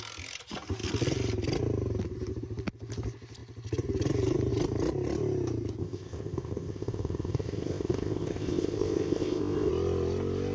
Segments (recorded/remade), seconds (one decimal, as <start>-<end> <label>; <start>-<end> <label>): 0.0-5.8 recorded; 5.8-9.7 remade; 9.7-10.5 recorded